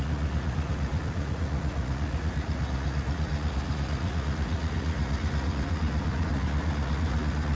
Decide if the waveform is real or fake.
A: fake